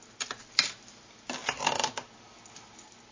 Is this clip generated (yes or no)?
no